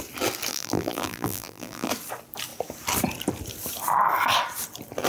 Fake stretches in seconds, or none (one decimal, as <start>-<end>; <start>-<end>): 0.5-1.9

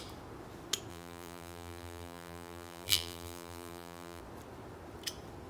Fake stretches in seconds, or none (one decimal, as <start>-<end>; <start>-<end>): 0.9-4.2

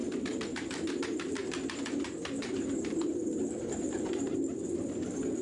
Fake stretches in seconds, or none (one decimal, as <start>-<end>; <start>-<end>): none

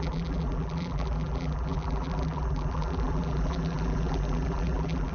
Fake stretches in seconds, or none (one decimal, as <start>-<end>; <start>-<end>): 0.0-5.1